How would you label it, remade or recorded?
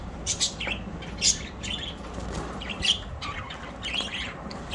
recorded